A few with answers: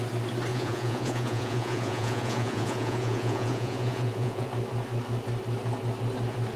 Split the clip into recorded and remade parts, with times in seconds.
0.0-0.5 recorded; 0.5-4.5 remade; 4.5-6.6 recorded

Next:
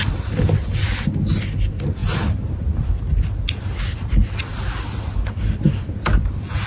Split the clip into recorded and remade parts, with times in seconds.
0.0-6.7 recorded

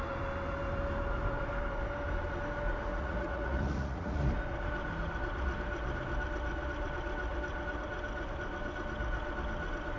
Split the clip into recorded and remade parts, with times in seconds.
0.0-2.9 recorded; 2.9-4.3 remade; 4.3-10.0 recorded